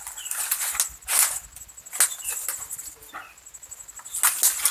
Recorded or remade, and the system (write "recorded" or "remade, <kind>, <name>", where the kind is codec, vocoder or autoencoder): recorded